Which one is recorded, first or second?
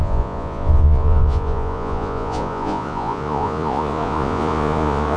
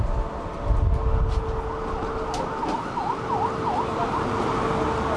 second